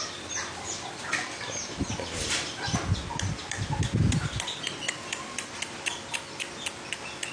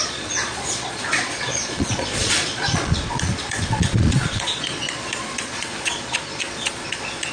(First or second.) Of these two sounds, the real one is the first